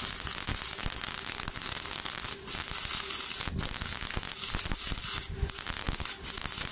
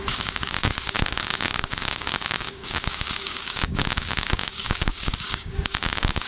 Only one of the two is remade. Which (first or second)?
second